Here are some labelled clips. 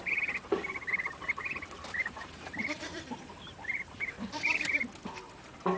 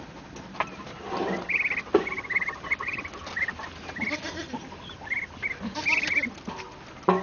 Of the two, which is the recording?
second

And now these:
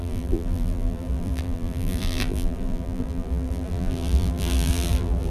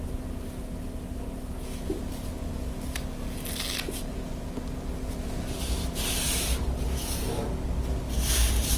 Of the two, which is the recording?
second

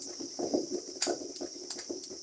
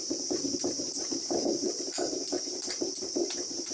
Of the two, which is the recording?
first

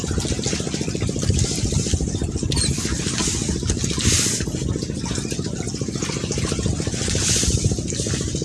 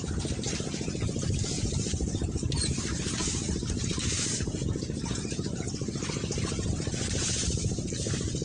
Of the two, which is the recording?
first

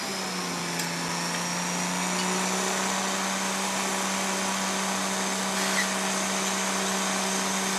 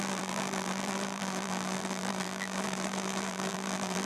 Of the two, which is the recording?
first